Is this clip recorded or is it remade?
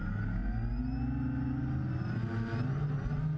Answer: recorded